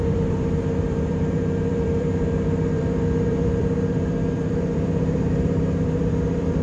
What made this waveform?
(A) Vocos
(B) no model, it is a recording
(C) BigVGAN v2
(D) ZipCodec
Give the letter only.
C